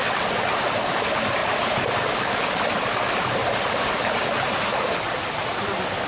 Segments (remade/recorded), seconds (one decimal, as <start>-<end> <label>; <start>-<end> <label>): 0.0-6.1 recorded